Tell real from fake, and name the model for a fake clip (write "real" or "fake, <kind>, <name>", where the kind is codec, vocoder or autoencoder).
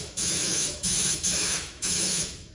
fake, autoencoder, DAC-VAE